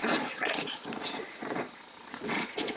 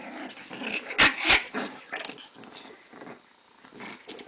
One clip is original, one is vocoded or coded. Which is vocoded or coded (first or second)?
first